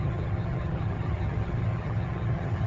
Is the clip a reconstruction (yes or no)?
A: yes